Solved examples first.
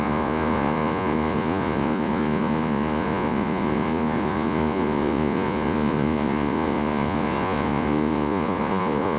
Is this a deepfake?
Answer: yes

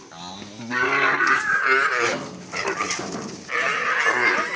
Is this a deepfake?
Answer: no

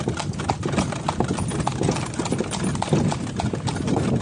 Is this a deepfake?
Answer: no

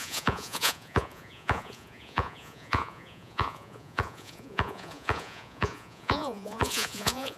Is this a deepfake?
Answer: yes